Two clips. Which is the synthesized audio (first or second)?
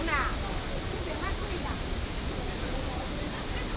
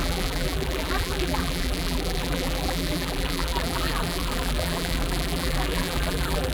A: second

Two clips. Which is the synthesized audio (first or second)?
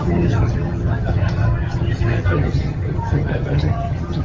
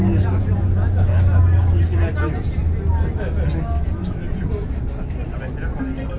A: first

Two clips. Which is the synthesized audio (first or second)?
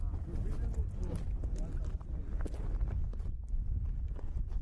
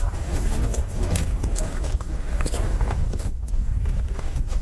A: second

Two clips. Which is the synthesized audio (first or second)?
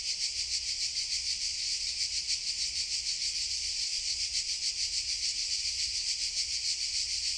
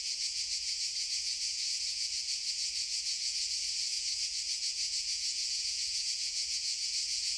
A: second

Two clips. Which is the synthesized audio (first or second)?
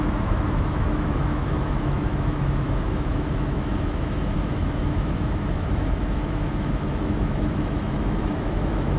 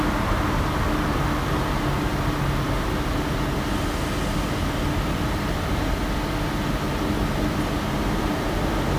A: first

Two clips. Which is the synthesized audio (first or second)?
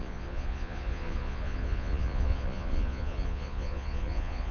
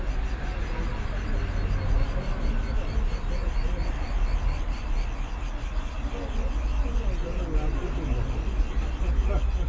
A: first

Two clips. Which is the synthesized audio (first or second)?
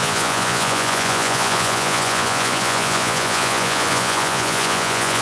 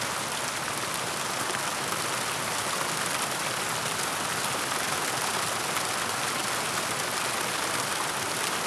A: first